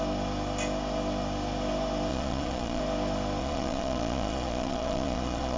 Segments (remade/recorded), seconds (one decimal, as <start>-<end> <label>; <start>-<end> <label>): 0.0-2.1 recorded; 2.1-2.8 remade; 2.8-3.4 recorded; 3.4-5.6 remade

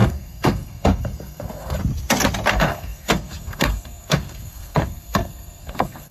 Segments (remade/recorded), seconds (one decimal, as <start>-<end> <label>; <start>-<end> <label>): 0.0-1.8 remade; 1.8-2.5 recorded; 2.5-6.1 remade

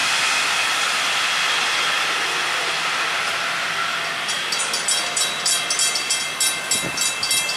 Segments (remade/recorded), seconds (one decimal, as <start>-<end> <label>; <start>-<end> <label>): 0.0-7.6 recorded

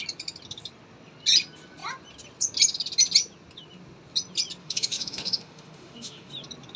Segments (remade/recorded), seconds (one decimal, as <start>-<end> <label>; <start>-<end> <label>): 0.0-4.6 recorded; 4.6-6.3 remade; 6.3-6.8 recorded

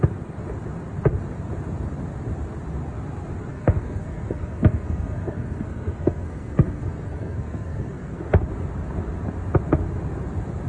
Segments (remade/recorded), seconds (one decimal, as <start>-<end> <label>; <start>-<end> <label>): 0.0-3.5 recorded; 3.5-8.2 remade; 8.2-10.7 recorded

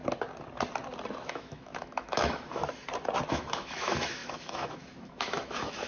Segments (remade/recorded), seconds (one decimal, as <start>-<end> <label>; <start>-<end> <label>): 0.0-1.2 recorded; 1.2-2.6 remade; 2.6-3.3 recorded; 3.3-5.9 remade

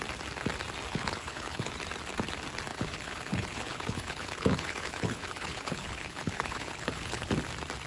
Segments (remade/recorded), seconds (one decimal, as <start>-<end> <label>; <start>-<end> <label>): 0.0-0.9 recorded; 0.9-1.7 remade; 1.7-2.7 recorded; 2.7-7.3 remade; 7.3-7.9 recorded